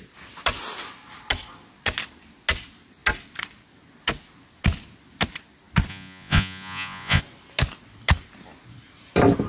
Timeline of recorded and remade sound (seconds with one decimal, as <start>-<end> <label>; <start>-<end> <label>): 0.0-5.9 recorded; 5.9-7.2 remade; 7.2-9.5 recorded

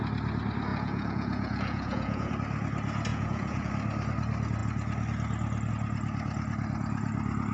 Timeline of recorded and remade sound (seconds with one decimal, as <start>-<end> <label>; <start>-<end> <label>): 0.0-0.7 recorded; 0.7-2.3 remade; 2.3-3.1 recorded; 3.1-3.7 remade; 3.7-7.5 recorded

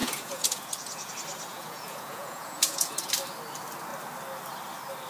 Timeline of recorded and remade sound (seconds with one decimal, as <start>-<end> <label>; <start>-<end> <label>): 0.0-1.1 remade; 1.1-1.5 recorded; 1.5-3.1 remade; 3.1-5.1 recorded

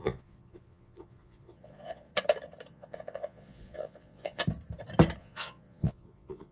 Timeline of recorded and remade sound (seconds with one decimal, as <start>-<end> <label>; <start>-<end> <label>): 0.0-2.1 remade; 2.1-2.7 recorded; 2.7-4.4 remade; 4.4-5.2 recorded; 5.2-6.5 remade

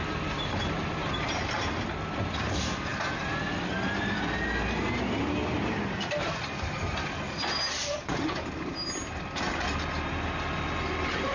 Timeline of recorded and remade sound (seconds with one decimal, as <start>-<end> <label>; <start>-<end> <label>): 0.0-11.3 recorded

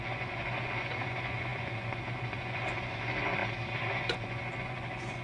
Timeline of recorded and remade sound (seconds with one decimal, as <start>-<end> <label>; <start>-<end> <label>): 0.0-3.4 remade; 3.4-3.9 recorded; 3.9-5.2 remade